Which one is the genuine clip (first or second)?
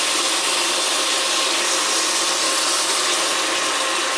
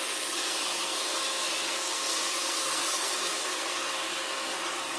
first